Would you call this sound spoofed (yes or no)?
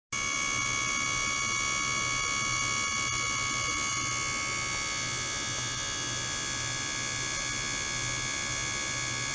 no